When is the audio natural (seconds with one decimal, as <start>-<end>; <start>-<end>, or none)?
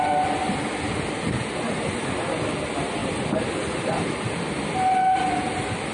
0.0-5.9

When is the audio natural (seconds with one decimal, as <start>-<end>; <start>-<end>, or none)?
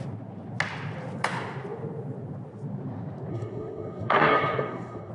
0.0-3.3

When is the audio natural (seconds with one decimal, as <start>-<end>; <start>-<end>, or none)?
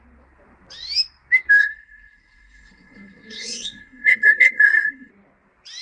0.0-1.6; 5.1-5.8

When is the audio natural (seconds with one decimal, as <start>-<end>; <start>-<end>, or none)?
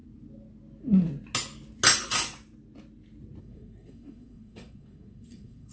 0.0-3.4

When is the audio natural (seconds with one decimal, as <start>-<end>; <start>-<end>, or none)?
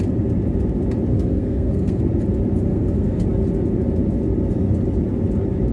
0.0-1.1; 2.0-2.7; 3.2-5.7